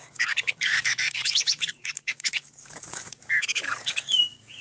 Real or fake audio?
fake